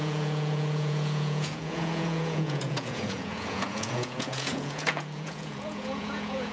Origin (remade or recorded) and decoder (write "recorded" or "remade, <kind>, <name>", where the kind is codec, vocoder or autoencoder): remade, vocoder, Vocos